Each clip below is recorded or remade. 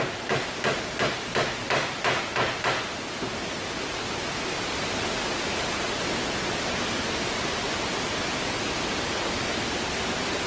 recorded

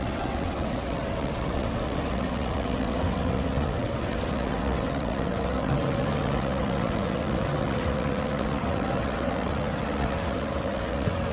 remade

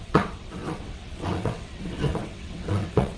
remade